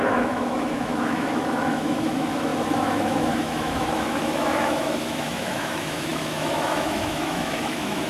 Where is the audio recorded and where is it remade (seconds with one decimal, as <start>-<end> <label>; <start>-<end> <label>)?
0.0-8.1 remade